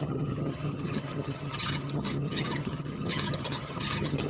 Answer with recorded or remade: remade